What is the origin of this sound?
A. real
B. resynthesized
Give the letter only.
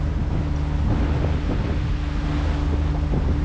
A